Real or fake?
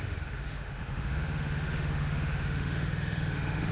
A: fake